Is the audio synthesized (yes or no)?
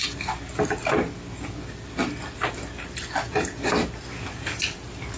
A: no